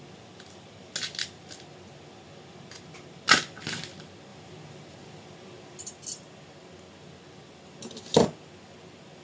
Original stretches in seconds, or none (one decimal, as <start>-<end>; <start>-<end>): 0.0-9.2